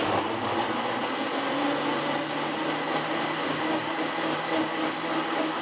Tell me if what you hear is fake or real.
real